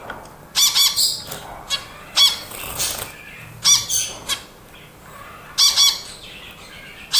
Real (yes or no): yes